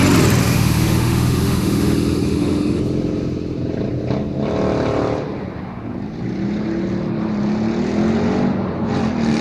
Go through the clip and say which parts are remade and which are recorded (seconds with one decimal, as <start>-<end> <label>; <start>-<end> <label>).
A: 0.0-0.4 recorded; 0.4-2.8 remade; 2.8-9.4 recorded

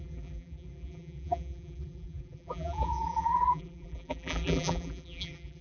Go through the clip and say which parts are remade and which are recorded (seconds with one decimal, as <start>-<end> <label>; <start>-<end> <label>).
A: 0.0-5.6 remade

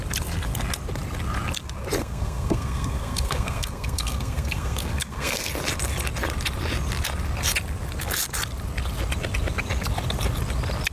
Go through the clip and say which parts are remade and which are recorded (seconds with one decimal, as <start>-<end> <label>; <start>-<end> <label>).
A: 0.0-2.0 recorded; 2.0-5.5 remade; 5.5-10.9 recorded

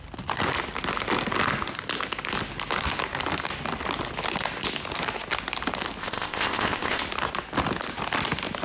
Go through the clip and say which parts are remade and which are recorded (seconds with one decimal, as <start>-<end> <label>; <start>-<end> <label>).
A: 0.0-6.0 recorded; 6.0-7.0 remade; 7.0-8.6 recorded

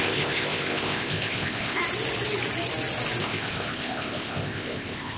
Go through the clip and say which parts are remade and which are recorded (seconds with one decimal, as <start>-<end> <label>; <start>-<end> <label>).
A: 0.0-1.8 remade; 1.8-3.2 recorded; 3.2-5.2 remade

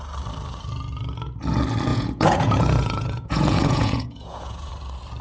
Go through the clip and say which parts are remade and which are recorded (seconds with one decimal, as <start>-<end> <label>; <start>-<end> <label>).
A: 0.0-1.9 recorded; 1.9-4.7 remade; 4.7-5.2 recorded

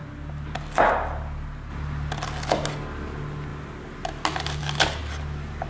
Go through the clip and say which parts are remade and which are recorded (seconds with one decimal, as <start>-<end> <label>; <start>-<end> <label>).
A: 0.0-5.7 recorded